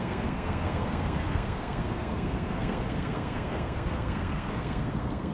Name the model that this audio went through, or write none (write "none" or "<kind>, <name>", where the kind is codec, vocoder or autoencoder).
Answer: codec, SNAC